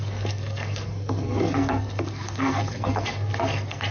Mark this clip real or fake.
fake